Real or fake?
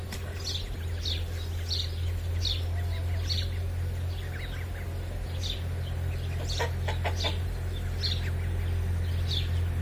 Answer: real